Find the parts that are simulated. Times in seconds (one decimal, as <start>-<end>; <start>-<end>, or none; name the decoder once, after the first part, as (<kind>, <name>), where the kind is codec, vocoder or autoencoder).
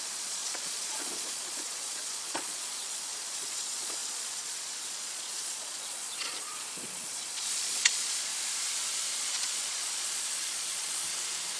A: 0.0-8.3 (vocoder, Vocos); 9.2-11.1